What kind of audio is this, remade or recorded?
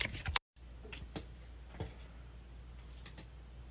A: recorded